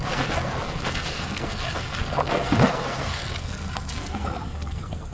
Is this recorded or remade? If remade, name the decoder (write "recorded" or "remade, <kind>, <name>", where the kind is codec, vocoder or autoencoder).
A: remade, codec, SNAC